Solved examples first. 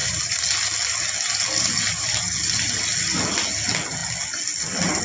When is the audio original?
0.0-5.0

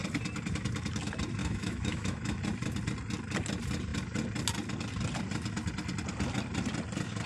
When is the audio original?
0.0-1.4; 2.4-7.3

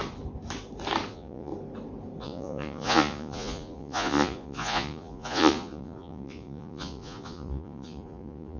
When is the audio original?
0.0-1.1; 1.5-2.2

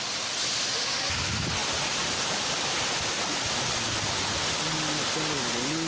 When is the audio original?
0.0-5.9

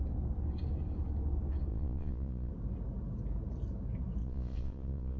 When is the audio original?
0.0-1.7; 2.5-4.2

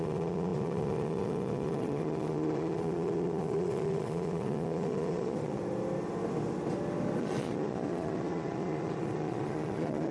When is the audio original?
5.6-7.2

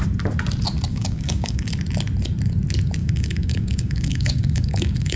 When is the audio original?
0.0-0.9; 1.7-3.0